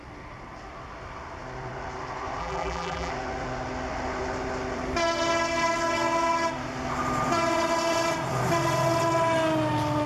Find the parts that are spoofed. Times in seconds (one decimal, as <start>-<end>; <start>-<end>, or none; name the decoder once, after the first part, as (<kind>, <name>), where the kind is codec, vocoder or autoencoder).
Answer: 2.4-3.1 (vocoder, BigVGAN v2)